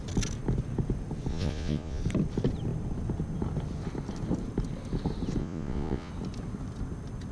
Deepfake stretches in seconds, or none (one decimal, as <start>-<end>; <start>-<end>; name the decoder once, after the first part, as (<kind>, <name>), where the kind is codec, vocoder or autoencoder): 1.3-2.0 (vocoder, Vocos); 5.4-6.1